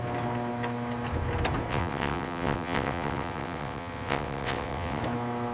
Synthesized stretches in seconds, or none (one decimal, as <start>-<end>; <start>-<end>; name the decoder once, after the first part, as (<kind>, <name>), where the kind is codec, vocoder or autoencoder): 1.7-5.0 (vocoder, WaveNeXt)